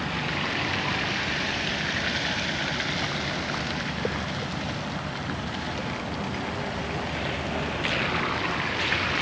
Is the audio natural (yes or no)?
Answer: yes